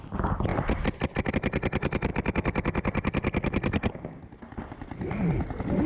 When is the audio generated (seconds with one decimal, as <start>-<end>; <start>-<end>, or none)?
0.5-1.3